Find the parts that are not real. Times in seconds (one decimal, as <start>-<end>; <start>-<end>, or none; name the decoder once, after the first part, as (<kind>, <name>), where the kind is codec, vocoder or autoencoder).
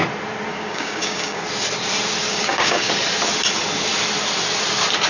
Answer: 0.5-1.4 (codec, DAC); 2.3-2.9